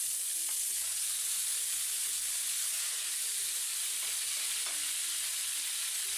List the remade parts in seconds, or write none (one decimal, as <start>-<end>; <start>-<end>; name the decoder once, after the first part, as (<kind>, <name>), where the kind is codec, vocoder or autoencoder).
none